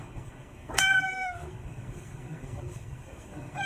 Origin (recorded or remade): remade